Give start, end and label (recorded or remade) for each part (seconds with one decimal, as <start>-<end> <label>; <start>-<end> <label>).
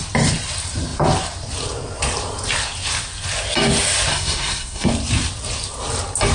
0.0-4.1 recorded; 4.1-4.9 remade; 4.9-6.3 recorded